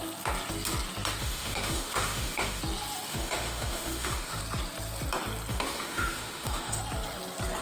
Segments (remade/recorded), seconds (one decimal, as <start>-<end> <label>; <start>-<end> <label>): 0.0-1.2 recorded; 1.2-2.6 remade; 2.6-3.1 recorded; 3.1-4.4 remade; 4.4-5.5 recorded; 5.5-6.8 remade; 6.8-7.6 recorded